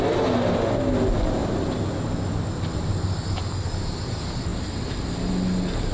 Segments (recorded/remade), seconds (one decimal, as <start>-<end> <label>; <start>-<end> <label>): 0.0-5.9 recorded